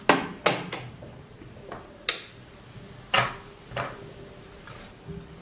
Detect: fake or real real